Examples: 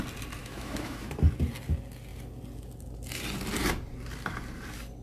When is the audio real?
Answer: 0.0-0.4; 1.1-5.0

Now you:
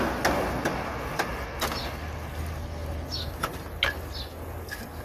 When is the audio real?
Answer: 0.0-5.0

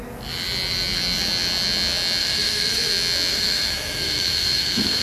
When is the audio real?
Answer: 0.0-2.2; 2.9-3.3

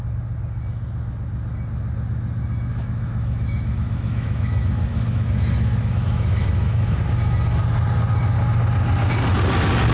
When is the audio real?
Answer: 0.0-2.7; 7.0-9.9

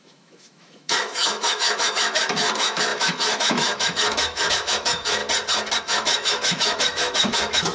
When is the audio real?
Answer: 5.2-5.8